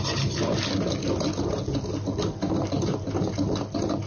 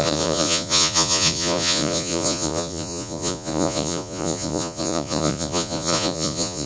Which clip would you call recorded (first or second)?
first